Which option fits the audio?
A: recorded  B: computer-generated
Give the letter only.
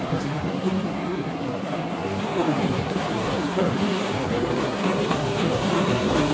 B